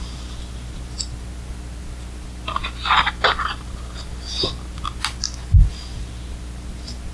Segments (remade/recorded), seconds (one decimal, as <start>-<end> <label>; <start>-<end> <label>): 0.0-7.1 recorded

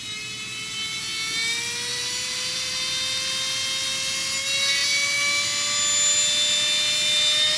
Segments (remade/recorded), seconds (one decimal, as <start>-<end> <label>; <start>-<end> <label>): 0.0-1.9 recorded; 1.9-2.7 remade; 2.7-7.6 recorded

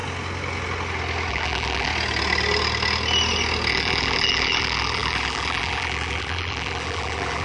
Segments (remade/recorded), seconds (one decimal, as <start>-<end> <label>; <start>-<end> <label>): 0.0-1.3 recorded; 1.3-1.9 remade; 1.9-3.7 recorded; 3.7-7.4 remade

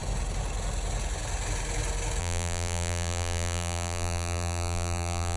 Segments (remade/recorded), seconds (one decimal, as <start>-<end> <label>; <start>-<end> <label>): 0.0-2.2 recorded; 2.2-5.4 remade

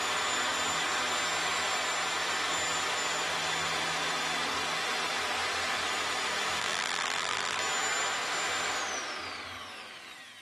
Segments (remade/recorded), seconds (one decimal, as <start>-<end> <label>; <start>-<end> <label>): 0.0-6.6 recorded; 6.6-7.6 remade; 7.6-10.4 recorded

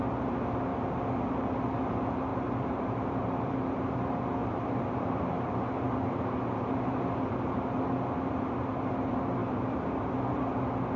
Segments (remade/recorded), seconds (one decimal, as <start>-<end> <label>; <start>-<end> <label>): 0.0-2.3 recorded; 2.3-3.5 remade; 3.5-4.4 recorded; 4.4-7.8 remade; 7.8-9.4 recorded; 9.4-10.1 remade; 10.1-11.0 recorded

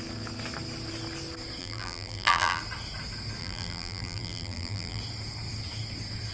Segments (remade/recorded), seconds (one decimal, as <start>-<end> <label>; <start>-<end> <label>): 0.0-1.6 recorded; 1.6-2.6 remade; 2.6-3.4 recorded; 3.4-5.0 remade; 5.0-6.3 recorded